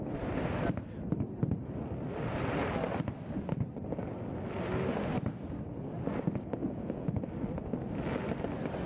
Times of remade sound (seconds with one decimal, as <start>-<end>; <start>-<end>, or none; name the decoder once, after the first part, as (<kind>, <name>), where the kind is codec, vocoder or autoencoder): 6.6-7.3 (vocoder, Vocos)